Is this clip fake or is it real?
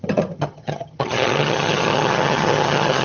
fake